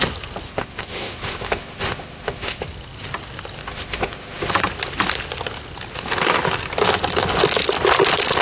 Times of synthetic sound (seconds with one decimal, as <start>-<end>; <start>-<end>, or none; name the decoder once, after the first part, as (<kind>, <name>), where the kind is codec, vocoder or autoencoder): 0.5-2.6 (autoencoder, DAC-VAE); 3.6-4.5